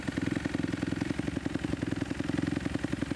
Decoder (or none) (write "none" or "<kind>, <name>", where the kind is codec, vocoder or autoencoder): vocoder, BigVGAN v2